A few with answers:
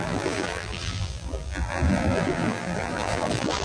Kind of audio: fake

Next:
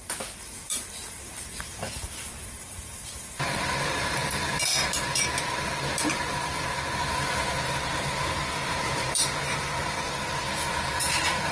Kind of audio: fake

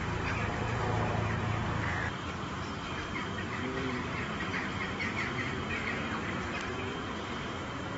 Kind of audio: fake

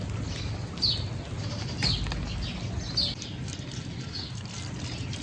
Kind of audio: real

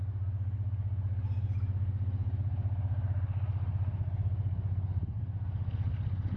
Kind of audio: real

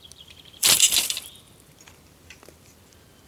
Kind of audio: fake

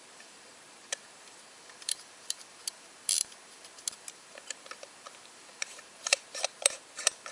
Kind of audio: fake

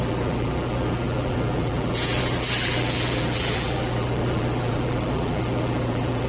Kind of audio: fake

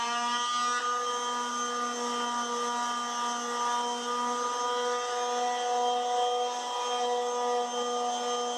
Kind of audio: real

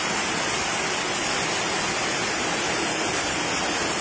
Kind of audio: fake